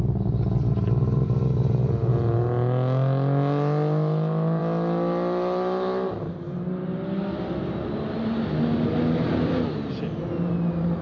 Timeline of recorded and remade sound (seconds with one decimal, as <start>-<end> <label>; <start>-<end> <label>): 0.0-11.0 recorded